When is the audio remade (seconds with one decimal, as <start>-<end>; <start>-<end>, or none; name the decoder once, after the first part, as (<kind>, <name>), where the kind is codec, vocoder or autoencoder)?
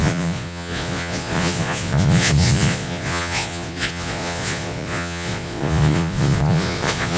0.0-7.2 (vocoder, Vocos)